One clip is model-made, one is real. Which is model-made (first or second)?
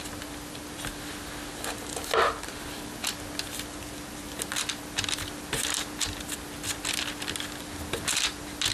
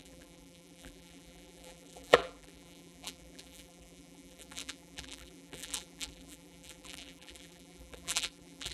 second